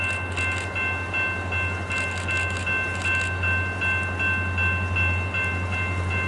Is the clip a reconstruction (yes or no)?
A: no